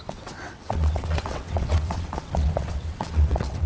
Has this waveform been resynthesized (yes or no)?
yes